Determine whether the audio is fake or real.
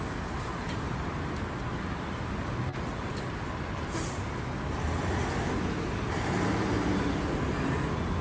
real